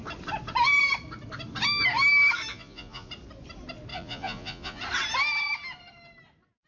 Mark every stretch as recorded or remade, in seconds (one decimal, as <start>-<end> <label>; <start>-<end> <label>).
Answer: 0.0-2.5 recorded; 2.5-3.1 remade; 3.1-3.9 recorded; 3.9-4.8 remade; 4.8-6.7 recorded